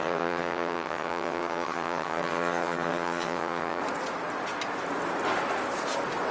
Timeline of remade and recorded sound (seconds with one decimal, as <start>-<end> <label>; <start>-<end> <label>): 0.0-3.8 remade; 3.8-6.3 recorded